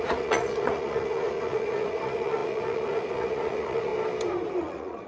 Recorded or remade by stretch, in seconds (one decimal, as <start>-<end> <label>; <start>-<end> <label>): 0.0-3.9 remade; 3.9-4.6 recorded; 4.6-5.1 remade